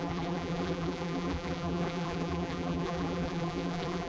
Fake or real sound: fake